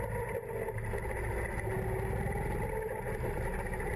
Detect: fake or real real